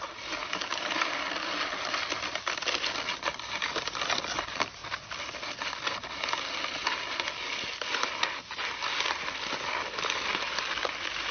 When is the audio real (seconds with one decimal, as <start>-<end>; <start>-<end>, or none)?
0.0-0.4; 1.2-11.3